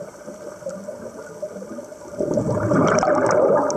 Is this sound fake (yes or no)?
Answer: no